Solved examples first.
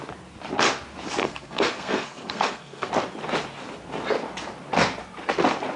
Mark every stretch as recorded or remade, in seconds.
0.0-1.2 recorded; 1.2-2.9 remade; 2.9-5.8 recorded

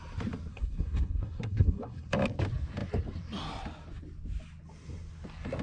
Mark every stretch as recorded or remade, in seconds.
0.0-0.5 recorded; 0.5-2.1 remade; 2.1-5.6 recorded

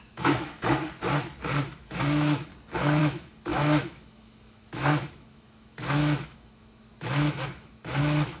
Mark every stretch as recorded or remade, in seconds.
0.0-0.8 remade; 0.8-1.6 recorded; 1.6-2.5 remade; 2.5-3.0 recorded; 3.0-8.4 remade

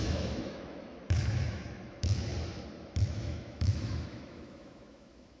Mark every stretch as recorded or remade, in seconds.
0.0-2.3 remade; 2.3-3.0 recorded; 3.0-5.4 remade

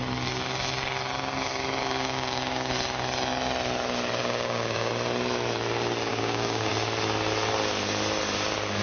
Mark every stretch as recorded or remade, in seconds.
0.0-1.8 recorded; 1.8-2.7 remade; 2.7-4.2 recorded; 4.2-4.9 remade; 4.9-6.1 recorded; 6.1-6.7 remade; 6.7-8.8 recorded

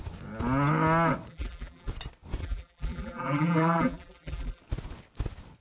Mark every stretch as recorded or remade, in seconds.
0.0-1.3 recorded; 1.3-1.9 remade; 1.9-2.4 recorded; 2.4-4.6 remade; 4.6-5.6 recorded